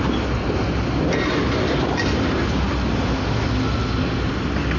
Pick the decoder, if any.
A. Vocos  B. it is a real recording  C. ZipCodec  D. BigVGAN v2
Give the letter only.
B